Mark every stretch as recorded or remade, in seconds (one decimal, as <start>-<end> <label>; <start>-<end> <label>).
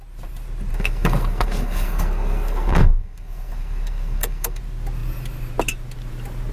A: 0.0-0.7 recorded; 0.7-4.6 remade; 4.6-6.5 recorded